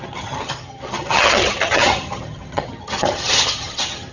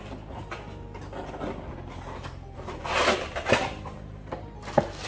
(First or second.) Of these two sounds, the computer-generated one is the first